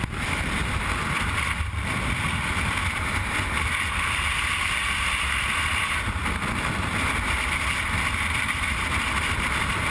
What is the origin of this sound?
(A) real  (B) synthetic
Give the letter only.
B